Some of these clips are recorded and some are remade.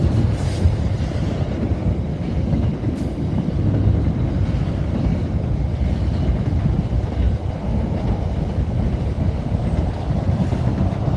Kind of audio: recorded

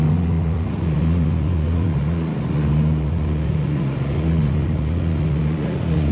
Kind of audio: remade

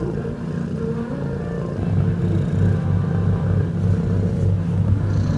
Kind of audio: recorded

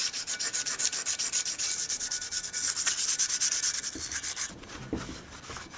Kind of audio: recorded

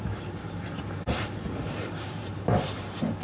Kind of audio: remade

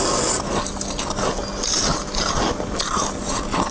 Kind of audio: recorded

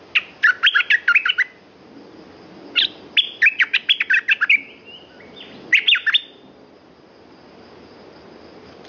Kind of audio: recorded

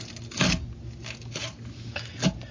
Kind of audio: recorded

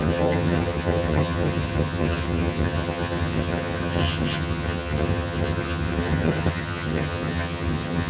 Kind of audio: remade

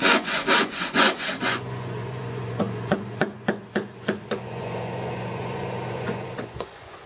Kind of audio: remade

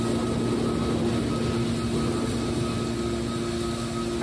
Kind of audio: recorded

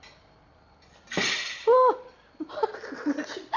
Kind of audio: recorded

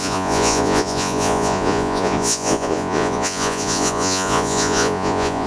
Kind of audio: remade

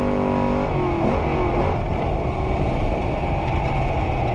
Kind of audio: recorded